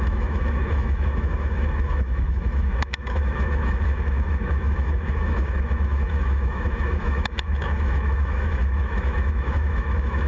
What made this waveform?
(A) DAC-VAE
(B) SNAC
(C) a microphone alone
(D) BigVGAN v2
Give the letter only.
A